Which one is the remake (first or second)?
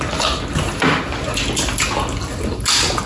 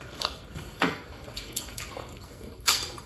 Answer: second